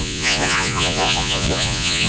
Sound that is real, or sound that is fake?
fake